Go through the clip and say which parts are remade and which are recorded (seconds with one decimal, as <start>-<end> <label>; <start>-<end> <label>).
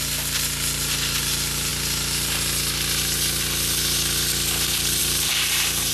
0.0-1.7 remade; 1.7-5.0 recorded; 5.0-5.9 remade